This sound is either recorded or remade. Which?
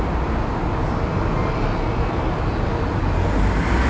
recorded